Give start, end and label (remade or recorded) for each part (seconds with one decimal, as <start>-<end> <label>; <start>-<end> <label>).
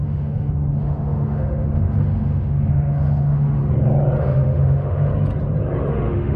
0.0-3.6 remade; 3.6-4.2 recorded; 4.2-5.1 remade; 5.1-5.9 recorded; 5.9-6.4 remade